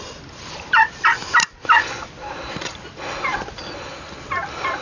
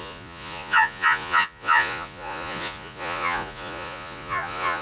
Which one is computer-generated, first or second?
second